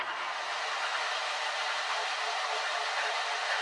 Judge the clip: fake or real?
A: real